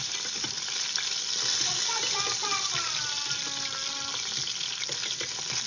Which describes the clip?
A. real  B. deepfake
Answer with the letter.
A